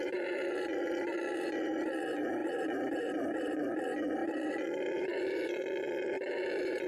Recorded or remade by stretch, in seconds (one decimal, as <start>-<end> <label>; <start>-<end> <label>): 0.0-2.4 recorded; 2.4-3.8 remade; 3.8-4.2 recorded; 4.2-5.2 remade; 5.2-6.9 recorded